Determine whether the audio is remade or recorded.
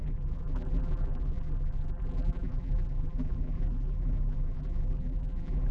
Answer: remade